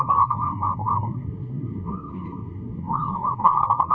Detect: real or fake fake